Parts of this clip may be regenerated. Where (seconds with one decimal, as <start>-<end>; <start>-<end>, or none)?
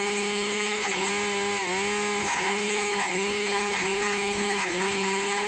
0.0-1.1; 2.2-5.5